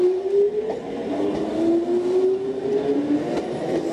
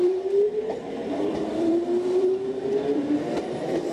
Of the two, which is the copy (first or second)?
second